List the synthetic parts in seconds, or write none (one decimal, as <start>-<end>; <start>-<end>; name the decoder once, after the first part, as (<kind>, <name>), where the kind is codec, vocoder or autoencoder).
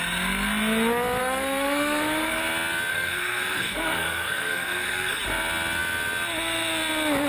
1.2-2.4 (codec, SNAC); 2.9-5.2